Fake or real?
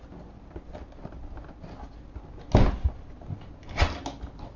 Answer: real